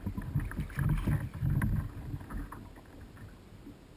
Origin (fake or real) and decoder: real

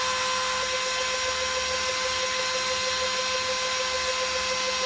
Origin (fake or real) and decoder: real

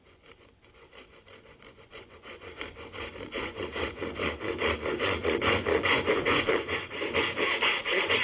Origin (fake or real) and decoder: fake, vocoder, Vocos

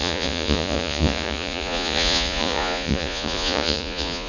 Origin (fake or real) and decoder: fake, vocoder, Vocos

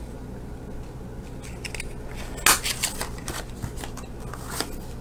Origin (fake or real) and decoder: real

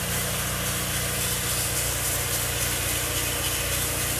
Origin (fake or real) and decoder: real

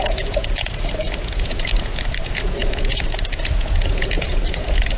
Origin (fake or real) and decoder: fake, vocoder, Vocos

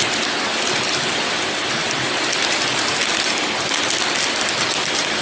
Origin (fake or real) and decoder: real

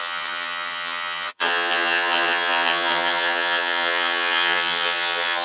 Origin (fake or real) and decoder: fake, vocoder, HiFi-GAN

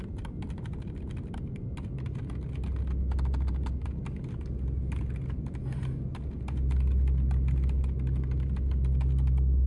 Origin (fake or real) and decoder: real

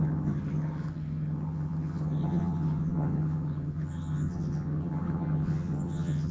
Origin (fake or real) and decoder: fake, vocoder, HiFi-GAN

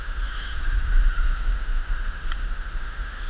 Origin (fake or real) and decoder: fake, autoencoder, DAC-VAE